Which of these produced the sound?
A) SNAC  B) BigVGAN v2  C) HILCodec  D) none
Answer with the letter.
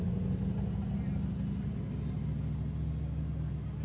D